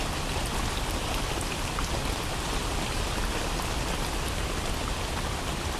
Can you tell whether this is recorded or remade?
recorded